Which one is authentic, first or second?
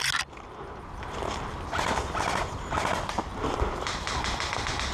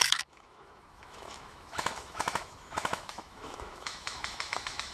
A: first